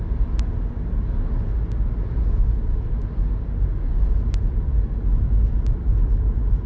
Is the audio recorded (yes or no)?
yes